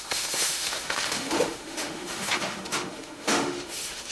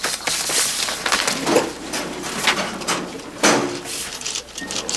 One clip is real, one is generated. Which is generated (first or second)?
first